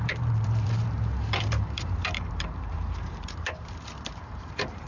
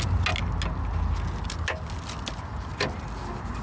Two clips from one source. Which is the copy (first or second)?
first